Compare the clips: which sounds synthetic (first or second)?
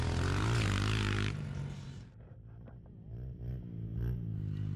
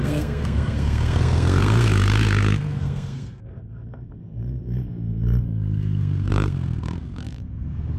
second